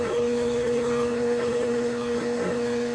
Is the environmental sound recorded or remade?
remade